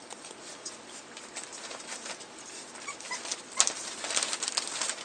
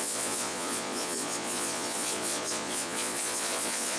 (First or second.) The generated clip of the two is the second